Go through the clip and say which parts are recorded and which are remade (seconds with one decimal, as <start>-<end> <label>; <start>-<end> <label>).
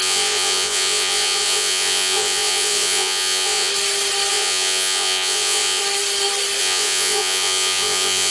0.0-3.7 remade; 3.7-4.3 recorded; 4.3-5.8 remade; 5.8-6.6 recorded; 6.6-8.3 remade